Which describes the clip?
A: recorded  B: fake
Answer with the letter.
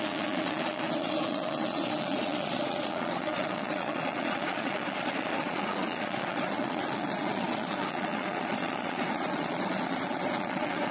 B